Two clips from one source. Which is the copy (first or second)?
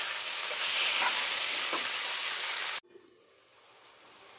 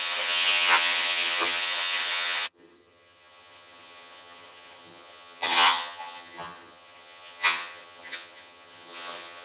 second